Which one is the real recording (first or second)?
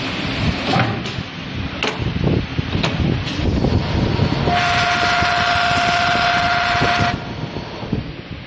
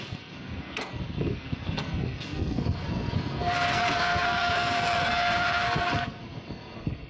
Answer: first